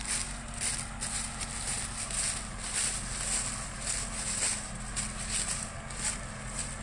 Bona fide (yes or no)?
yes